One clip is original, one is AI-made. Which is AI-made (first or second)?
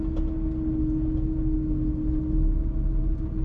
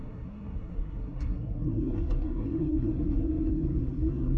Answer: second